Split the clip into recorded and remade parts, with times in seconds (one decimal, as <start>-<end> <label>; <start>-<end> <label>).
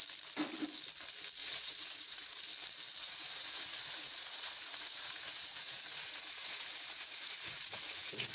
0.0-1.4 recorded; 1.4-2.4 remade; 2.4-3.0 recorded; 3.0-8.3 remade